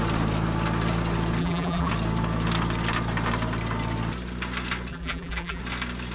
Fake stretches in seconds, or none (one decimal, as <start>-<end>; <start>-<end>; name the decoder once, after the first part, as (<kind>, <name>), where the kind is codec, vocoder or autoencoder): 1.4-1.9 (vocoder, BigVGAN v2); 4.9-5.6